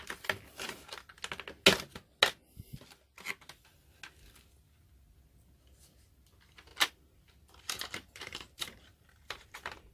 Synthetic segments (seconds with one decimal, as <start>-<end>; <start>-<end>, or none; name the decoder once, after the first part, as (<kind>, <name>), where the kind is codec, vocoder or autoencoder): 6.7-9.9 (vocoder, BigVGAN v2)

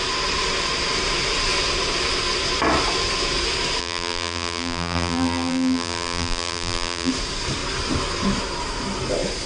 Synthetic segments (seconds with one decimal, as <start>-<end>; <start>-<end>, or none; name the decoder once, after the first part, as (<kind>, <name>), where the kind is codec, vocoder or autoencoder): 3.8-7.1 (vocoder, BigVGAN v2)

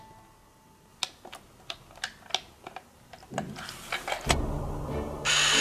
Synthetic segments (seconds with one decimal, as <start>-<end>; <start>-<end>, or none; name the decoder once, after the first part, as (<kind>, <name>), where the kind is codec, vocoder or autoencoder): none

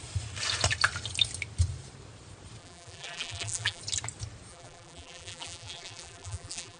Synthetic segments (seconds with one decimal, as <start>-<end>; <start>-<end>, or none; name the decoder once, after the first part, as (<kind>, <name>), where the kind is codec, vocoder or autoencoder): 2.6-3.8 (vocoder, BigVGAN v2); 4.5-6.8

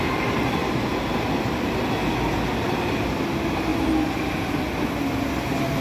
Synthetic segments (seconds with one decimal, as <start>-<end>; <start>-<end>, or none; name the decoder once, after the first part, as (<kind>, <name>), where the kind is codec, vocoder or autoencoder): none

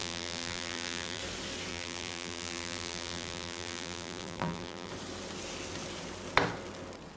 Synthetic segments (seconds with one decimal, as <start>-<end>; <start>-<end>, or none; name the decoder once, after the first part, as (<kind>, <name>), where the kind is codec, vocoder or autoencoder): 0.0-1.2 (vocoder, BigVGAN v2); 1.7-4.9

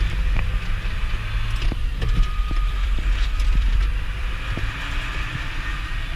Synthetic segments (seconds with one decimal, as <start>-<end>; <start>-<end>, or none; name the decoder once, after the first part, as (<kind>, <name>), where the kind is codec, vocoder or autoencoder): 1.8-3.7 (vocoder, BigVGAN v2)

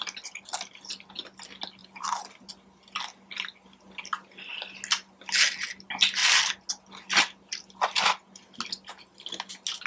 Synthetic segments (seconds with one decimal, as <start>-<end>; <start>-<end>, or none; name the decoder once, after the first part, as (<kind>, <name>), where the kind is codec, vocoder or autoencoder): 1.8-2.5 (vocoder, BigVGAN v2)